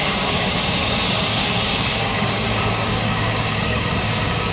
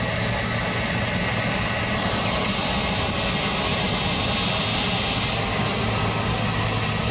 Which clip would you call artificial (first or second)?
first